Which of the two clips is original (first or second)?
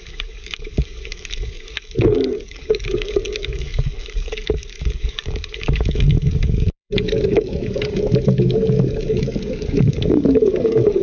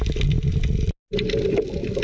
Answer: second